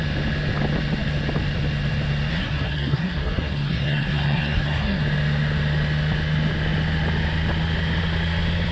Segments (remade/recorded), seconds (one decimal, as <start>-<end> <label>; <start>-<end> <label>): 0.0-2.3 recorded; 2.3-5.0 remade; 5.0-8.7 recorded